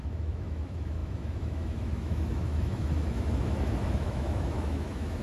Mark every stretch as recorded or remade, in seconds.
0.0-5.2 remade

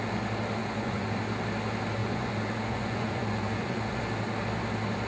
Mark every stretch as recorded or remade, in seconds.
0.0-0.6 recorded; 0.6-1.2 remade; 1.2-2.0 recorded; 2.0-4.0 remade; 4.0-5.1 recorded

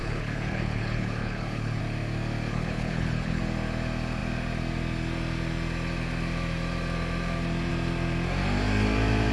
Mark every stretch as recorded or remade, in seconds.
0.0-1.8 remade; 1.8-2.5 recorded; 2.5-3.4 remade; 3.4-9.3 recorded

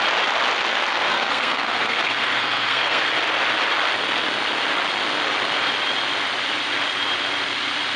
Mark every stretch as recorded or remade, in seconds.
0.0-0.7 recorded; 0.7-3.0 remade; 3.0-8.0 recorded

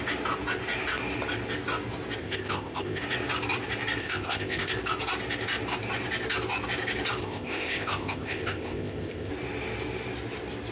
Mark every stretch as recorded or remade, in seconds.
0.0-2.2 recorded; 2.2-3.0 remade; 3.0-4.0 recorded; 4.0-4.7 remade; 4.7-7.2 recorded; 7.2-9.3 remade; 9.3-10.7 recorded